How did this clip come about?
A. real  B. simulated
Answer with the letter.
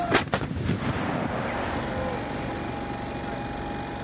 A